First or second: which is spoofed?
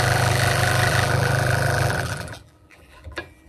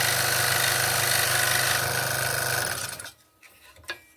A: first